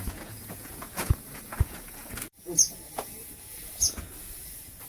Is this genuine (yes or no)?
no